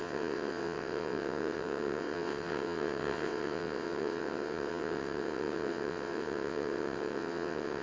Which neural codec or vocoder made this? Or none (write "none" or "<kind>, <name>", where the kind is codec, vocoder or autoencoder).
vocoder, WaveNeXt